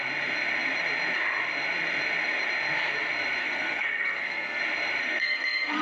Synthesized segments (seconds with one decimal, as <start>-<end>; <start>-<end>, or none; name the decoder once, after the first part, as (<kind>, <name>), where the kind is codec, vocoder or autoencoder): 3.4-4.6 (codec, SNAC); 5.0-5.8